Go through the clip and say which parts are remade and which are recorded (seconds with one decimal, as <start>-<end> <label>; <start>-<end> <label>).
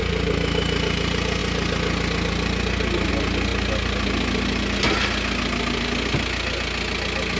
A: 0.0-7.4 recorded